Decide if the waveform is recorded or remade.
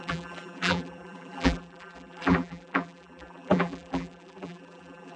remade